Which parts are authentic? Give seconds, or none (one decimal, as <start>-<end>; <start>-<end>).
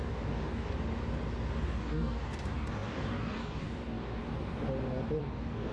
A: 0.7-1.6; 4.2-5.2